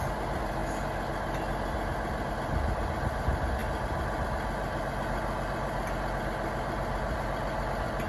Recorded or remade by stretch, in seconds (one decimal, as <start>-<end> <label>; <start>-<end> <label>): 0.0-8.1 recorded